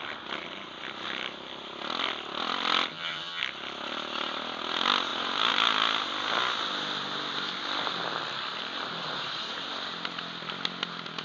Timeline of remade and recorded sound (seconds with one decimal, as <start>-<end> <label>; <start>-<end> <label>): 0.0-2.9 recorded; 2.9-3.4 remade; 3.4-11.2 recorded